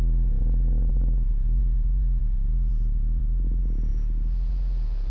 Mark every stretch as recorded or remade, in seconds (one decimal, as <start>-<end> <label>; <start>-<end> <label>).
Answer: 0.0-0.9 recorded; 0.9-1.6 remade; 1.6-5.1 recorded